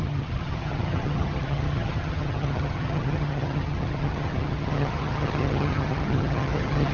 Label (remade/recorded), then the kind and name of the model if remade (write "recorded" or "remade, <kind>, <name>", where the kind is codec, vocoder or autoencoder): remade, vocoder, HiFi-GAN